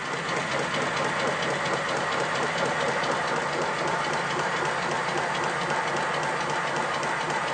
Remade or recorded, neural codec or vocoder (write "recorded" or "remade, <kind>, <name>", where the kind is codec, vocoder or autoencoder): recorded